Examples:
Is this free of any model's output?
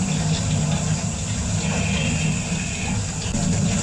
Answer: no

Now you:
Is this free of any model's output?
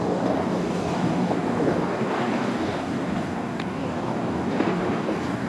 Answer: no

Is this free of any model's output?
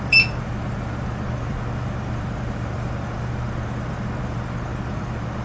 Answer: no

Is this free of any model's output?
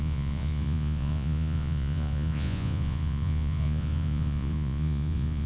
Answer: no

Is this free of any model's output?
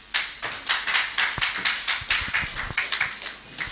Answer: yes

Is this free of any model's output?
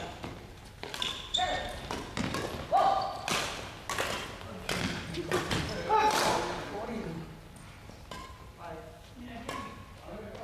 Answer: yes